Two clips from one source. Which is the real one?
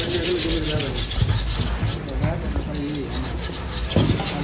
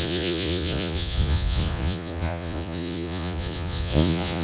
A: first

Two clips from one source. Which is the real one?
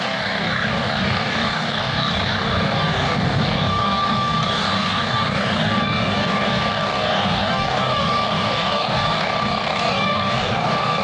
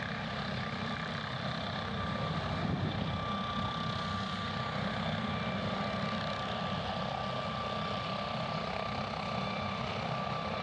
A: second